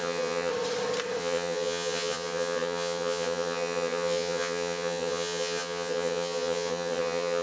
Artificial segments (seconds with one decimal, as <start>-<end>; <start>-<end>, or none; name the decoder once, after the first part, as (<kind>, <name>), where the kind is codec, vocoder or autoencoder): 0.0-0.5 (vocoder, HiFi-GAN); 1.2-7.4